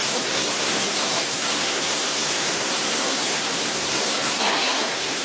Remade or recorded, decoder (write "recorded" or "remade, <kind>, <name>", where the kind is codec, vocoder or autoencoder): remade, codec, SNAC